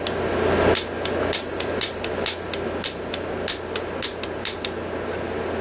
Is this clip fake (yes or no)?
no